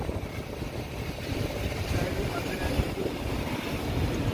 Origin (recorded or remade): recorded